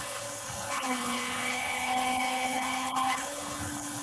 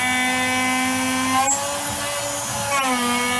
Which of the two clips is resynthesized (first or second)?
first